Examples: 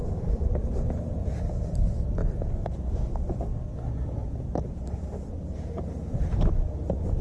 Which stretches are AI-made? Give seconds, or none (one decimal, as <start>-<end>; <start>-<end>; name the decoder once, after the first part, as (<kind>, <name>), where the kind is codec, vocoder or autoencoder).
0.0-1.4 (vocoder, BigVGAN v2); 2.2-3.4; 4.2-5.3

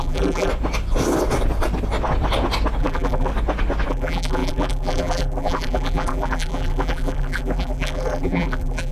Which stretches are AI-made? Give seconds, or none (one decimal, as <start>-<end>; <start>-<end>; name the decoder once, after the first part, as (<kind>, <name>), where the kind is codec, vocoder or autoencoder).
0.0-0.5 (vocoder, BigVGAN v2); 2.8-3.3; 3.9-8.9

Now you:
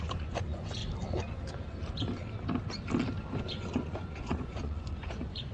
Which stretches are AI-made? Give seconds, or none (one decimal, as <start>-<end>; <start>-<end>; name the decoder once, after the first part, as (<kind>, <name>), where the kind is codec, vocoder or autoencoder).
0.0-0.8 (vocoder, Vocos); 3.4-5.5